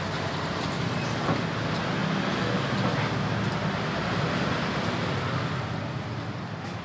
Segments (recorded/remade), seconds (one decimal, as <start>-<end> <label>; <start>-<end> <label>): 0.0-6.8 recorded

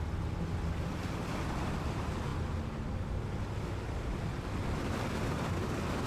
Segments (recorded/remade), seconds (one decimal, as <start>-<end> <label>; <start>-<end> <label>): 0.0-2.3 remade; 2.3-6.1 recorded

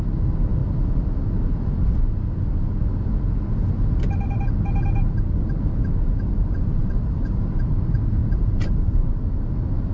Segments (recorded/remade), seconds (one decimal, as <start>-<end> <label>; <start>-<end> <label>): 0.0-6.8 recorded; 6.8-7.4 remade; 7.4-8.2 recorded; 8.2-9.1 remade; 9.1-9.9 recorded

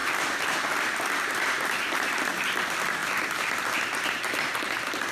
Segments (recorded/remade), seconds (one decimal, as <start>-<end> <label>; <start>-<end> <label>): 0.0-2.1 remade; 2.1-3.0 recorded; 3.0-3.7 remade; 3.7-5.1 recorded